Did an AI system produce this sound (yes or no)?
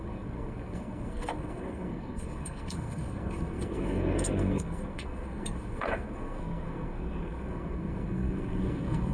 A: yes